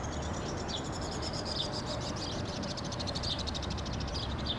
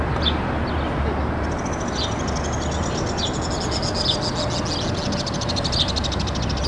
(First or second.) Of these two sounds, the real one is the second